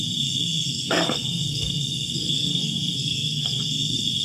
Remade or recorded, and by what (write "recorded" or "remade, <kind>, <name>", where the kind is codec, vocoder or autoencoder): remade, codec, SNAC